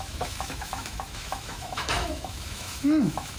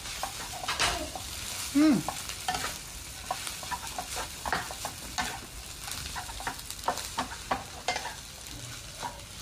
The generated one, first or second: first